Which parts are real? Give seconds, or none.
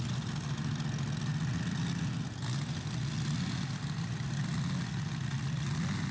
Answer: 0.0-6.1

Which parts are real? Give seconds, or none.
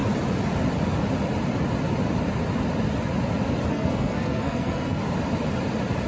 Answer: 0.0-3.7; 5.0-6.1